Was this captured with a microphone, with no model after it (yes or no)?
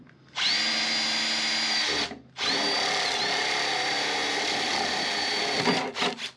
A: yes